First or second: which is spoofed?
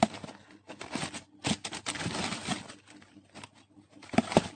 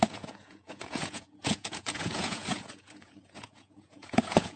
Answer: second